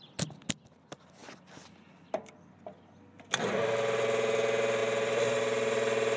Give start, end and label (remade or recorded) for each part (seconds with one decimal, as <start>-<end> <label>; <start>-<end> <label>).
0.0-6.2 recorded